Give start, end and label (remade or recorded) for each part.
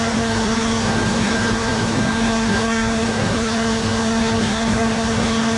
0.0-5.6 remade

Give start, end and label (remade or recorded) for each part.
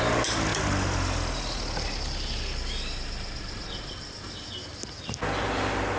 0.0-6.0 recorded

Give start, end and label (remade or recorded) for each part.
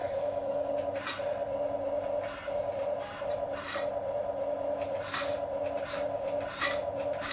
0.0-0.7 remade; 0.7-7.3 recorded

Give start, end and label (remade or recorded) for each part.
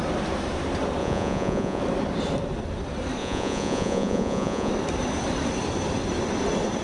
0.0-1.0 recorded; 1.0-1.8 remade; 1.8-3.2 recorded; 3.2-4.7 remade; 4.7-6.8 recorded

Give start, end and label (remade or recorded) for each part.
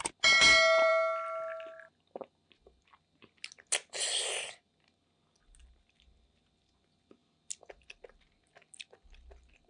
0.0-9.7 recorded